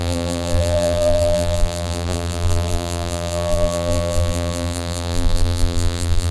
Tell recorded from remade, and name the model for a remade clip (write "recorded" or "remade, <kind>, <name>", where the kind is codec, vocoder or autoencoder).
remade, vocoder, BigVGAN v2